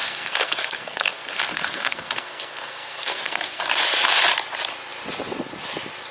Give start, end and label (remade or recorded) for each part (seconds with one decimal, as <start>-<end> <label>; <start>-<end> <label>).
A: 0.0-3.7 remade; 3.7-6.1 recorded